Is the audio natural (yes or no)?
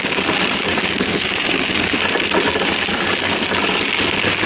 yes